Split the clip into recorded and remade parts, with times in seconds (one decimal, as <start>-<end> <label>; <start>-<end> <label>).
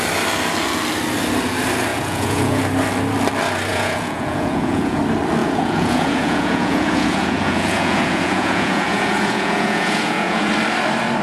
0.0-1.9 recorded; 1.9-2.6 remade; 2.6-3.7 recorded; 3.7-5.0 remade; 5.0-5.4 recorded; 5.4-10.5 remade; 10.5-11.2 recorded